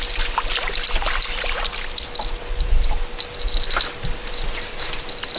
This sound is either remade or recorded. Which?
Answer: recorded